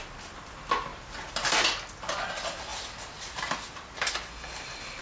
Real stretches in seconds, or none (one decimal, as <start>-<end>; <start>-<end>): 0.0-5.0